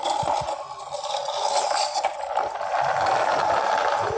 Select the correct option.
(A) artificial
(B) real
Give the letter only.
B